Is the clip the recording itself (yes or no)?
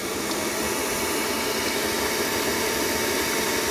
yes